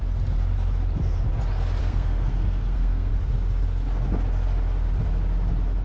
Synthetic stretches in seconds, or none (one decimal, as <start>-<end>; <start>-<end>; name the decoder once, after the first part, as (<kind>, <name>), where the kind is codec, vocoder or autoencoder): 1.8-3.1 (codec, SNAC)